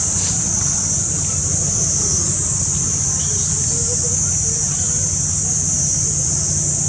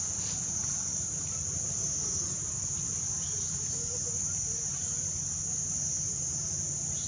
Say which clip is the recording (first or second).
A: first